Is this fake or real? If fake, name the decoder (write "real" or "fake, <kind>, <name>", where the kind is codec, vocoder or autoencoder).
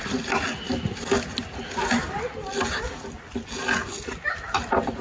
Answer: real